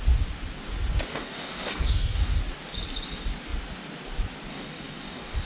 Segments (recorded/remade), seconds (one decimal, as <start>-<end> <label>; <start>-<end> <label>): 0.0-1.1 recorded; 1.1-2.4 remade; 2.4-4.5 recorded; 4.5-5.5 remade